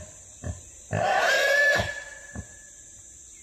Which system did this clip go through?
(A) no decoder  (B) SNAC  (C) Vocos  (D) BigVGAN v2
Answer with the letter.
A